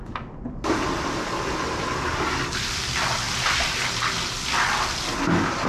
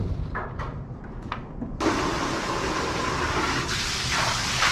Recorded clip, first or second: first